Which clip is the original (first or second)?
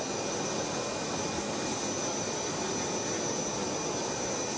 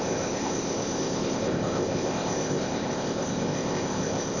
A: first